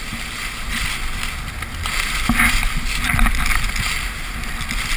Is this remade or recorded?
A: recorded